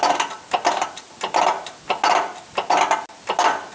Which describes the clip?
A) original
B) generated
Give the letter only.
A